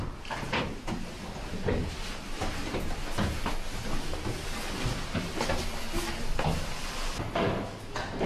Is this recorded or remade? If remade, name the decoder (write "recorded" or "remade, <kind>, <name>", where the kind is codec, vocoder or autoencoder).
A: recorded